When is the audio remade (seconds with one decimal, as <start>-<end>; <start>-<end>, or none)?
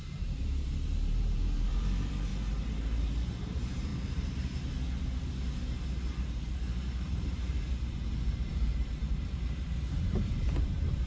0.0-2.3; 3.0-3.9; 6.2-11.1